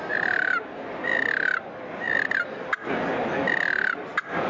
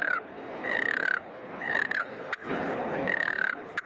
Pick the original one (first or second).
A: first